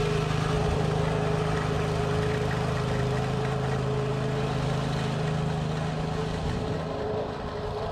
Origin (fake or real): real